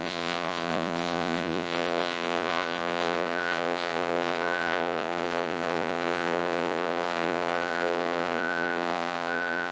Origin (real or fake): fake